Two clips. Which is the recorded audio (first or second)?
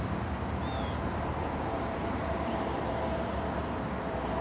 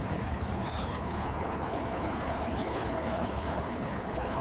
first